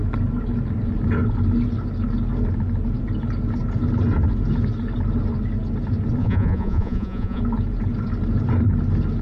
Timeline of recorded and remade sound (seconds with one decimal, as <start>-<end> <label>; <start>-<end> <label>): 0.0-6.2 recorded; 6.2-7.4 remade; 7.4-9.2 recorded